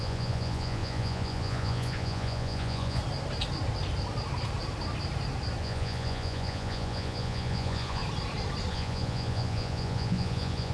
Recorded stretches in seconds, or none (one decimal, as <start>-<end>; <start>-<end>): 3.0-5.6; 8.0-8.7